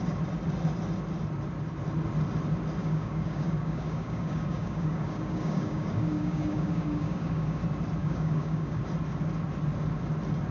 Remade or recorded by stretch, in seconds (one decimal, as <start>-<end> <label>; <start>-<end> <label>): 0.0-2.8 recorded; 2.8-7.6 remade; 7.6-8.0 recorded; 8.0-8.8 remade; 8.8-10.5 recorded